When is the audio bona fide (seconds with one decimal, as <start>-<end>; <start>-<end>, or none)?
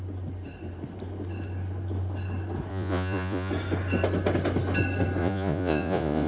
0.0-2.7; 3.5-5.2